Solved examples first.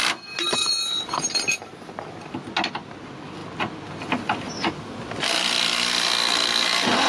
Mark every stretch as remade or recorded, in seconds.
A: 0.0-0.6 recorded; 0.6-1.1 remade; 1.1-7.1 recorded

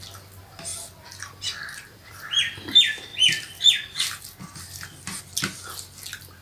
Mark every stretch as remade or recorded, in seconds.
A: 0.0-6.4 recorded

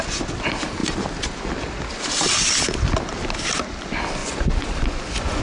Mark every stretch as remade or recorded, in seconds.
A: 0.0-4.2 recorded; 4.2-5.4 remade

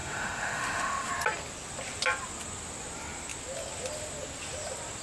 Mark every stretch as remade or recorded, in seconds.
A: 0.0-1.1 remade; 1.1-5.0 recorded

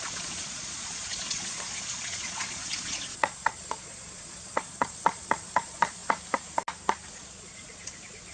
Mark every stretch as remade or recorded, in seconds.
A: 0.0-6.0 remade; 6.0-7.1 recorded; 7.1-8.3 remade